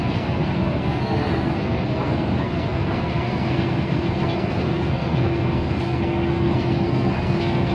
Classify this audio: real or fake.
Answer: fake